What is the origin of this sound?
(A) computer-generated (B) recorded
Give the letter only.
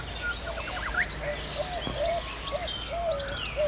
B